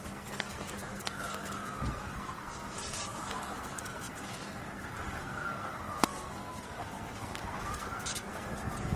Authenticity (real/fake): fake